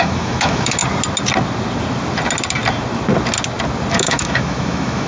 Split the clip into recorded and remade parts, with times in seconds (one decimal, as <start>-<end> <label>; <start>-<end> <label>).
0.0-0.8 remade; 0.8-3.9 recorded; 3.9-5.1 remade